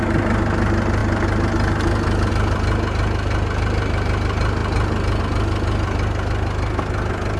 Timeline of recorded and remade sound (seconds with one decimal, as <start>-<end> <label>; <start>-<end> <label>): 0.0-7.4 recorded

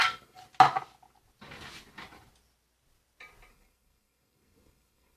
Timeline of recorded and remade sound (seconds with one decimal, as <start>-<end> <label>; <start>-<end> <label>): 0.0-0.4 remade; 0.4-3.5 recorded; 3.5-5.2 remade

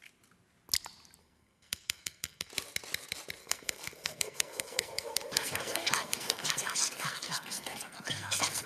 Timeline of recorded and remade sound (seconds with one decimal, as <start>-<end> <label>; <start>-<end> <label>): 0.0-1.2 recorded; 1.2-2.5 remade; 2.5-3.4 recorded; 3.4-8.7 remade

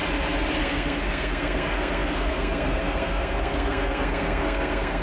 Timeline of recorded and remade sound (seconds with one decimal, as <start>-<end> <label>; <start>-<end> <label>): 0.0-0.6 recorded; 0.6-5.0 remade

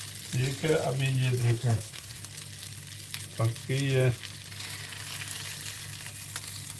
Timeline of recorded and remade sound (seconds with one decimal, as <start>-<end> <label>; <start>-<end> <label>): 0.0-1.4 recorded; 1.4-2.2 remade; 2.2-6.8 recorded

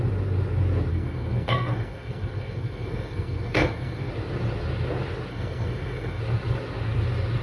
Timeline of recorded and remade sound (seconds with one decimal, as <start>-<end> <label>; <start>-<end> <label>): 0.0-0.9 recorded; 0.9-4.1 remade; 4.1-5.3 recorded; 5.3-6.2 remade; 6.2-7.4 recorded

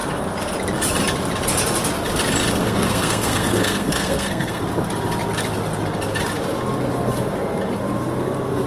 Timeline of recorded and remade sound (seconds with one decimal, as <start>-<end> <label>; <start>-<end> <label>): 0.0-2.6 recorded; 2.6-4.6 remade; 4.6-8.7 recorded

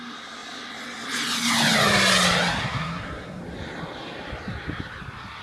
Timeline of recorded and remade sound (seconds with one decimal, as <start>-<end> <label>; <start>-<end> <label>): 0.0-2.6 recorded; 2.6-3.4 remade; 3.4-5.4 recorded